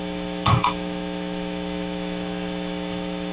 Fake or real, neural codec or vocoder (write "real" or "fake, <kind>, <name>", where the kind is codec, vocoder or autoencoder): fake, autoencoder, DAC-VAE